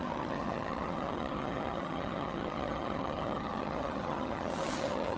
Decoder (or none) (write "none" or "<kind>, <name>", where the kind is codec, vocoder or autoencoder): vocoder, HiFi-GAN